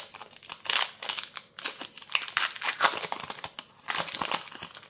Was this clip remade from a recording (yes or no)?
no